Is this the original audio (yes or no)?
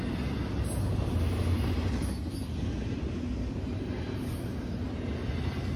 yes